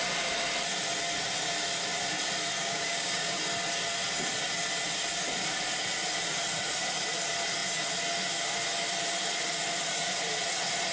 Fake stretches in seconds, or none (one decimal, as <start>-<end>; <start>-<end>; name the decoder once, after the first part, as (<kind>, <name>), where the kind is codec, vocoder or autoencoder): 2.6-3.4 (codec, DAC)